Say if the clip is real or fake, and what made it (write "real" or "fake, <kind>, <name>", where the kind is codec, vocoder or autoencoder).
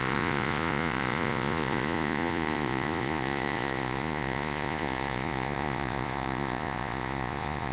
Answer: fake, vocoder, Vocos